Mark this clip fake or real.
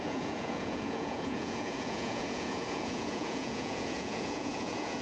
fake